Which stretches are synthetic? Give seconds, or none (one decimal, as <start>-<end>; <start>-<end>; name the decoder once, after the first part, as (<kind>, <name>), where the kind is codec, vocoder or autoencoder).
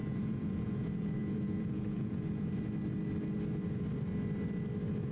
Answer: 0.0-2.5 (vocoder, Vocos)